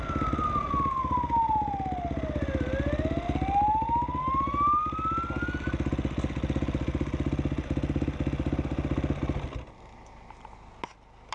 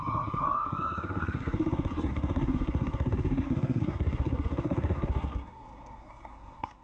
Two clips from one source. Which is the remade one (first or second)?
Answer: second